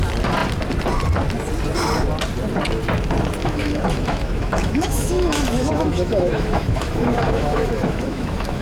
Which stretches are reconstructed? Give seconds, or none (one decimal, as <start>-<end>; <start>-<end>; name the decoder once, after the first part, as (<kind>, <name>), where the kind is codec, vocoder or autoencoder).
3.4-8.6 (autoencoder, DAC-VAE)